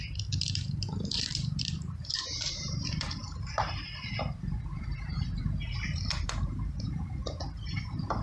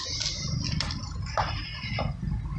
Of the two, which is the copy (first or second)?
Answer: first